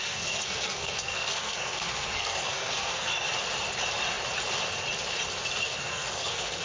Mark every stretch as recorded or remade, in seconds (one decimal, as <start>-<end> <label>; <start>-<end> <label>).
0.0-3.1 remade; 3.1-5.6 recorded; 5.6-6.6 remade